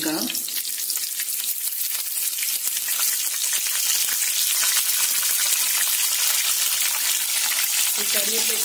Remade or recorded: recorded